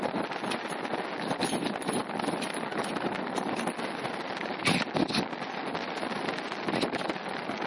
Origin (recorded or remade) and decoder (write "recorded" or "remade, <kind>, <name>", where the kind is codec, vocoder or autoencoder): recorded